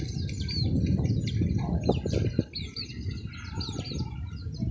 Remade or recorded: recorded